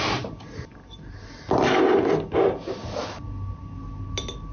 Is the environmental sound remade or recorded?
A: recorded